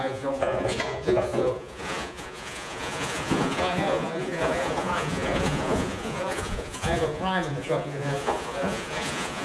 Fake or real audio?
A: fake